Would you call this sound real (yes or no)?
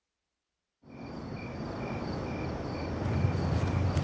yes